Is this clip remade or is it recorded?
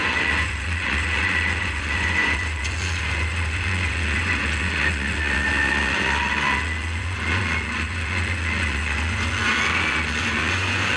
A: remade